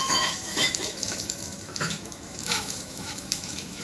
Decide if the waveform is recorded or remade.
remade